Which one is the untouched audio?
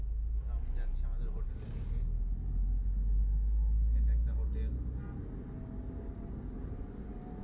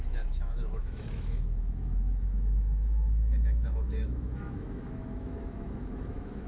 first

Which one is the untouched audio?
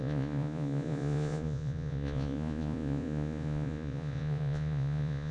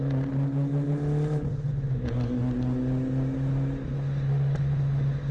second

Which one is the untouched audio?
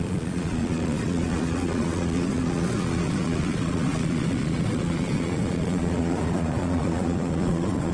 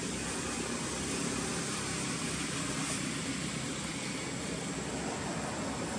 second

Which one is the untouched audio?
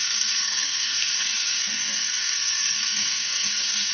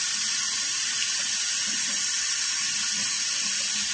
second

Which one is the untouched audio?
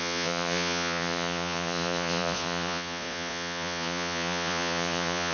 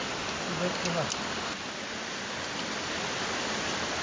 second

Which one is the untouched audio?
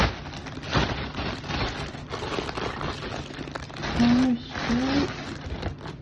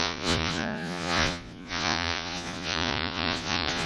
first